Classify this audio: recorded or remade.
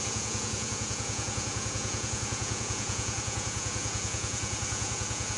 remade